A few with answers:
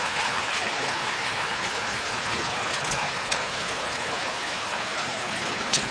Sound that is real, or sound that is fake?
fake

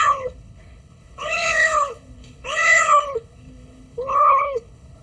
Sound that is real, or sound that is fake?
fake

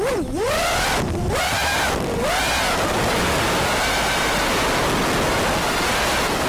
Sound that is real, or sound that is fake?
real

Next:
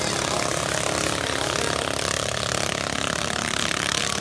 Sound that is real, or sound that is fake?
real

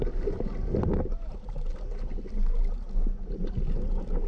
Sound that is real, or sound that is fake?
real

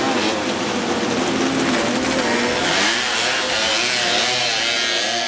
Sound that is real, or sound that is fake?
real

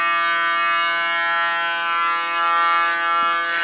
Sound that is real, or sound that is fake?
real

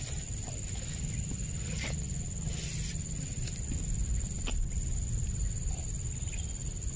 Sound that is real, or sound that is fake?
real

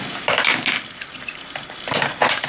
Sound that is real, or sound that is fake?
real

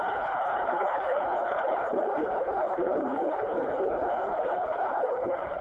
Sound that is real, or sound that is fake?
fake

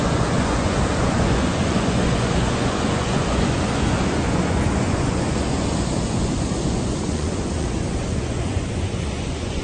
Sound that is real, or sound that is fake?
fake